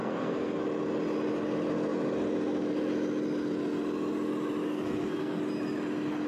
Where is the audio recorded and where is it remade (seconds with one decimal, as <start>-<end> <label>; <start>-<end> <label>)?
0.0-0.6 remade; 0.6-4.7 recorded; 4.7-5.4 remade; 5.4-6.3 recorded